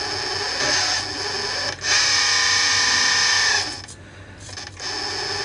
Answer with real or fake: real